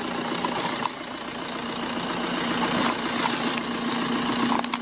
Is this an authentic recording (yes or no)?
yes